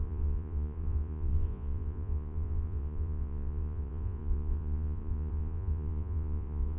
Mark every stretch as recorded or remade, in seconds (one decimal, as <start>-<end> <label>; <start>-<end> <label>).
0.0-6.8 remade